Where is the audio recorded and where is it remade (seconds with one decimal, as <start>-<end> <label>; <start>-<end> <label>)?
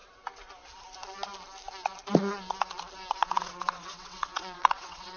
0.0-3.1 recorded; 3.1-5.2 remade